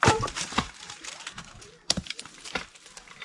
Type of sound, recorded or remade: remade